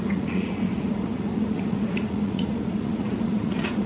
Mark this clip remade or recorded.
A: remade